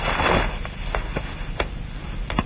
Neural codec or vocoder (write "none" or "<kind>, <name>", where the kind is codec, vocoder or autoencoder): none